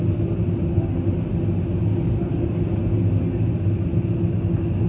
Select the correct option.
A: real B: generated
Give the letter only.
A